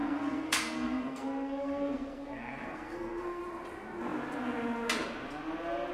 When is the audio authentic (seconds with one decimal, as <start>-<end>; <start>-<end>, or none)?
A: 3.4-5.9